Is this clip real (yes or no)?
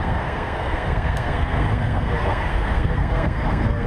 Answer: no